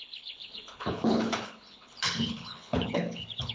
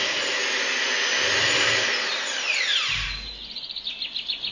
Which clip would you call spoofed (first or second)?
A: first